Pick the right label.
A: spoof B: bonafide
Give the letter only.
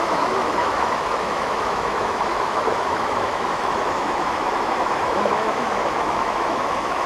A